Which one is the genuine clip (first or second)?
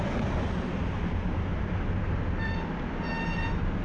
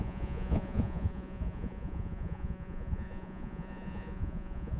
first